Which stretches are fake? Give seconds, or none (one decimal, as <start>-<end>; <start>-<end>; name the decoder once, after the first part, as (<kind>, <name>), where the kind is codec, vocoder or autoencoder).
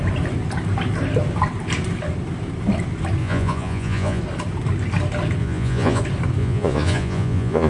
3.2-4.2 (vocoder, Vocos); 5.4-6.0; 6.4-7.7